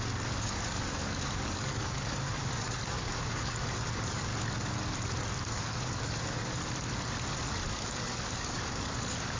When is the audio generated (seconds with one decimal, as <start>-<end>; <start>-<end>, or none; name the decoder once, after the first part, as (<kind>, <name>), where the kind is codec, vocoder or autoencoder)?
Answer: 0.0-4.3 (codec, DAC); 5.4-6.6; 7.7-9.4